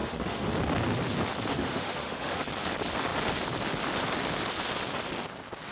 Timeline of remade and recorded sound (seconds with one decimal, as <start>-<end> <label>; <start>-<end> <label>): 0.0-0.5 remade; 0.5-1.5 recorded; 1.5-2.4 remade; 2.4-5.7 recorded